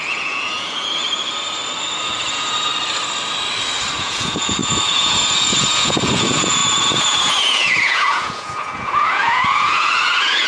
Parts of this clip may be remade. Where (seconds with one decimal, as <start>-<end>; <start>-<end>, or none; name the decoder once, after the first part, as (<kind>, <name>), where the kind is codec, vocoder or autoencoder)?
0.0-1.0 (vocoder, Vocos); 2.0-2.7; 4.0-10.5